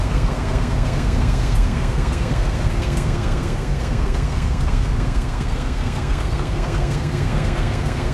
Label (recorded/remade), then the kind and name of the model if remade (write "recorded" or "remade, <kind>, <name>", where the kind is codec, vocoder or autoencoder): remade, codec, SNAC